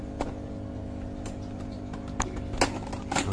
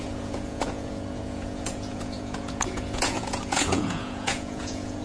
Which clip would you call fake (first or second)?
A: second